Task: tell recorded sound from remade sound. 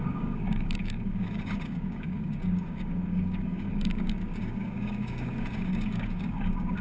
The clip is remade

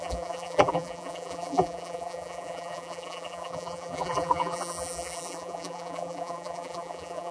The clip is remade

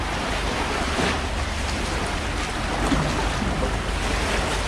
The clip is recorded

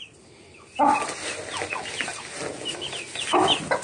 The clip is recorded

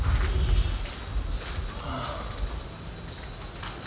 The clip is recorded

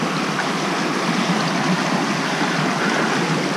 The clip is recorded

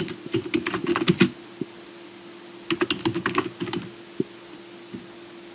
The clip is recorded